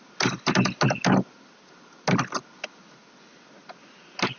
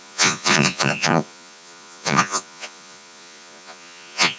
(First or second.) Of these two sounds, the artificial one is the second